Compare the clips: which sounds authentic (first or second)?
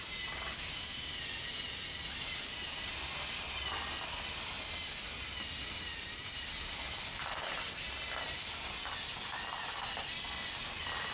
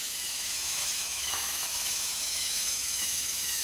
first